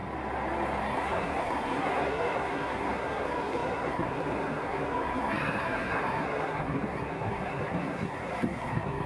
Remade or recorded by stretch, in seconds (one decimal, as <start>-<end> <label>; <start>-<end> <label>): 0.0-0.8 recorded; 0.8-9.1 remade